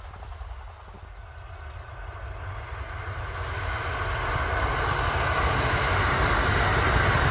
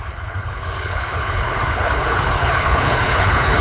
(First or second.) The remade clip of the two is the second